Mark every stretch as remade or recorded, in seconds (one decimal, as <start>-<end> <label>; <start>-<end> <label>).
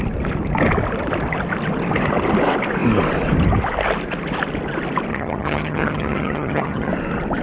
0.0-5.1 recorded; 5.1-6.9 remade; 6.9-7.4 recorded